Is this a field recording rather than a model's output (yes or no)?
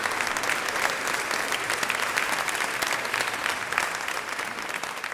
yes